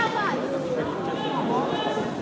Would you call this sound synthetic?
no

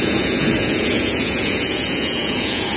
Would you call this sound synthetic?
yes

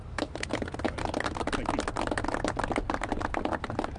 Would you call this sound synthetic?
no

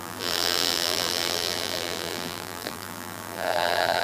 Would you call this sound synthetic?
yes